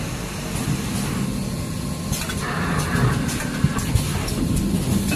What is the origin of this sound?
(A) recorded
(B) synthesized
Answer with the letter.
A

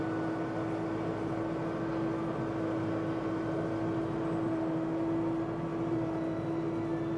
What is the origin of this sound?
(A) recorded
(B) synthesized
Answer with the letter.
A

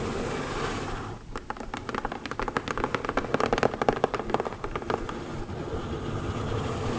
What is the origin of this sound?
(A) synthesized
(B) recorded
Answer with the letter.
B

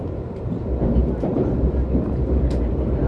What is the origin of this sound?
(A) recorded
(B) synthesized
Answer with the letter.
B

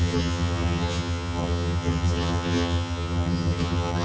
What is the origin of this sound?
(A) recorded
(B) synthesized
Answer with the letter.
B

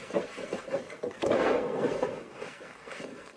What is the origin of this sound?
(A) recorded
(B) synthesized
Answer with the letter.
B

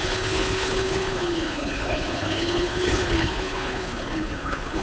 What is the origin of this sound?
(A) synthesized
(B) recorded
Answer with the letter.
A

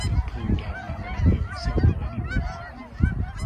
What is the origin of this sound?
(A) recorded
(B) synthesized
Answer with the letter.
A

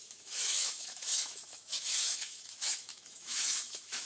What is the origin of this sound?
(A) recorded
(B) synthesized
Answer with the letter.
B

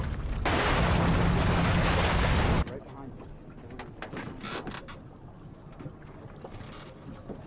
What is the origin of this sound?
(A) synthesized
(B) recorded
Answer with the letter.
B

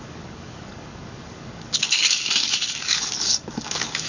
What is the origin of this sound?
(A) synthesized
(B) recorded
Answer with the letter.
A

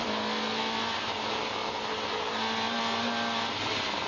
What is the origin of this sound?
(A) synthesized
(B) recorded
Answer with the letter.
B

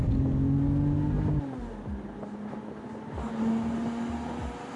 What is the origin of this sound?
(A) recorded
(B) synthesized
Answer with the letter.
A